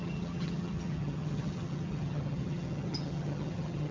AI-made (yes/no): yes